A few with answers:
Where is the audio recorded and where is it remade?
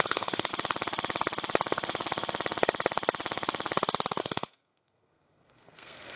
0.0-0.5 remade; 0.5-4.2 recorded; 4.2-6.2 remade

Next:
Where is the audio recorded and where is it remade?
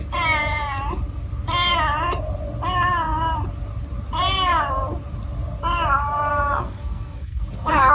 0.0-6.3 recorded; 6.3-7.9 remade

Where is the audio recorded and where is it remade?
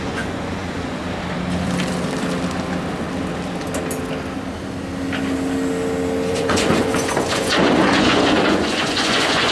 0.0-1.0 remade; 1.0-6.3 recorded; 6.3-9.5 remade